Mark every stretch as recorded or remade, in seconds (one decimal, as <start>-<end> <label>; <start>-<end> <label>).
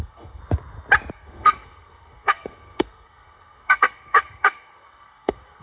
0.0-0.4 remade; 0.4-1.1 recorded; 1.1-5.6 remade